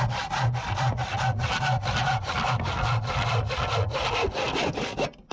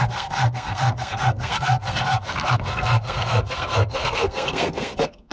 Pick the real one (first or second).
first